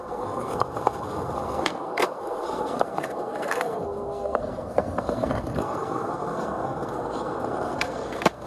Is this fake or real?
fake